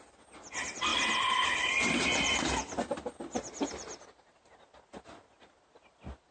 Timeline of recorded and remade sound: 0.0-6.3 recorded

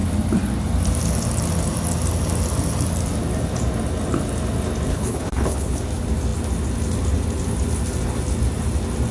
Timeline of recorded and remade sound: 0.0-4.9 recorded; 4.9-5.8 remade; 5.8-9.1 recorded

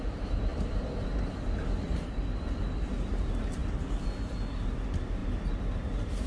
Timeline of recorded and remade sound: 0.0-6.3 recorded

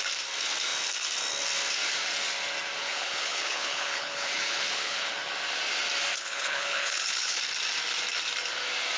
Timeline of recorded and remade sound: 0.0-2.8 recorded; 2.8-5.1 remade; 5.1-6.1 recorded; 6.1-7.4 remade; 7.4-9.0 recorded

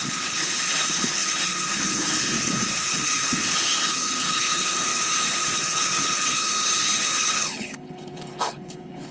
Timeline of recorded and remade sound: 0.0-9.1 remade

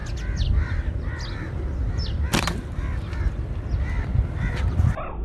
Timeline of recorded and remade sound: 0.0-5.2 recorded

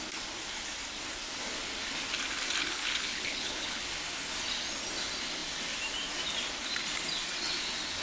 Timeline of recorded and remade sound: 0.0-2.6 recorded; 2.6-3.9 remade; 3.9-8.0 recorded